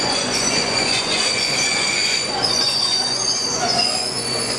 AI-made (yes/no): yes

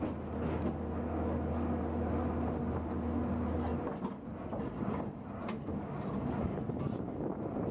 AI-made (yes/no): no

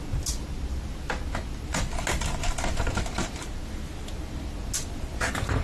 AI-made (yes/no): no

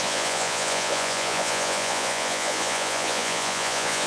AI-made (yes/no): yes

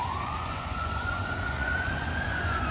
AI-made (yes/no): yes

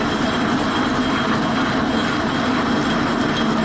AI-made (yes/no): no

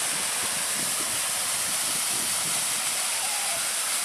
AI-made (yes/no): no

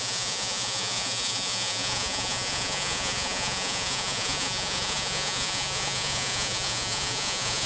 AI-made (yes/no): yes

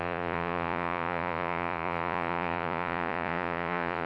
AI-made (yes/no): yes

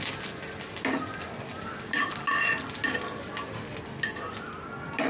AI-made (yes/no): no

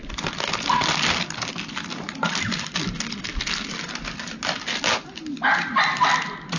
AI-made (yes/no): no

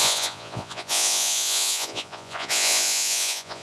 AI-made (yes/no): yes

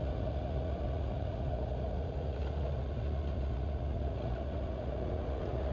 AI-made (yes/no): yes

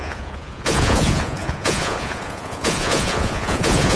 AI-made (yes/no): yes